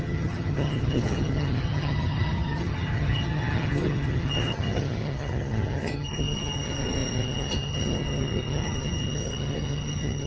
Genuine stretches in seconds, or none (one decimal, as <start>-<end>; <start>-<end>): none